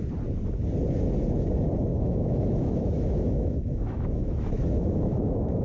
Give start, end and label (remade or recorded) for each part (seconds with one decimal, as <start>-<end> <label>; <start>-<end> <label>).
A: 0.0-1.9 recorded; 1.9-5.6 remade